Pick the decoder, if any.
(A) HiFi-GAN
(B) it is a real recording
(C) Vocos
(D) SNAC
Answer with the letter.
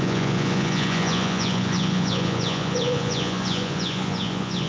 C